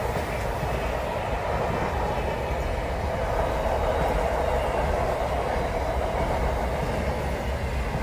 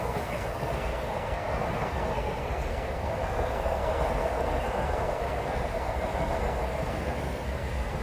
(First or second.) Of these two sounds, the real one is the first